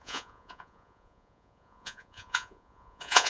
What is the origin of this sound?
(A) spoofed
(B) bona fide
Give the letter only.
A